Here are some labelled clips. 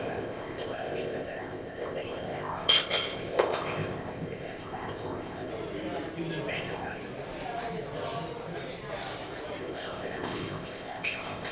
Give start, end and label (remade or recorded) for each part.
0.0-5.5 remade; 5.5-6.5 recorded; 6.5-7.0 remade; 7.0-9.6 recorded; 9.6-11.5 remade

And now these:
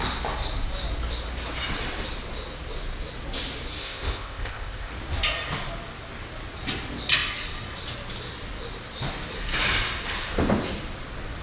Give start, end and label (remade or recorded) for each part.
0.0-3.8 recorded; 3.8-4.9 remade; 4.9-11.4 recorded

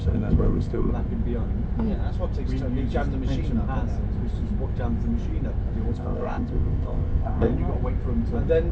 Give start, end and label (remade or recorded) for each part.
0.0-0.9 remade; 0.9-5.9 recorded; 5.9-7.5 remade; 7.5-8.7 recorded

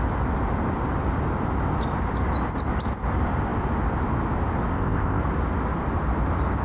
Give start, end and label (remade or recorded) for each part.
0.0-4.7 recorded; 4.7-5.2 remade; 5.2-6.6 recorded

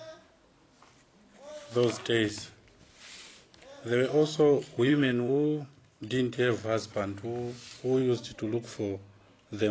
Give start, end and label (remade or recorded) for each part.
0.0-4.9 recorded; 4.9-6.0 remade; 6.0-9.7 recorded

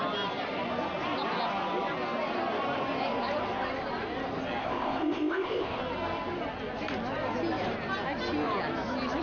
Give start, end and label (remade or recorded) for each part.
0.0-4.6 recorded; 4.6-5.8 remade; 5.8-9.2 recorded

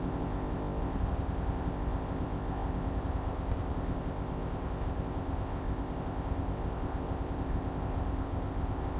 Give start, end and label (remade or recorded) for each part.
0.0-9.0 remade